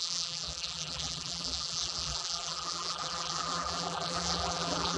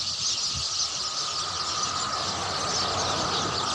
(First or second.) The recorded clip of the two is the second